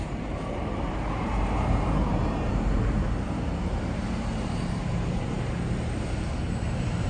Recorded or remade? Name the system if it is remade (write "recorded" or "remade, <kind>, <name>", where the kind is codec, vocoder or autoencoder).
remade, vocoder, BigVGAN v2